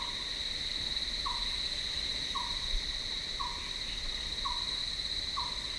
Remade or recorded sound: recorded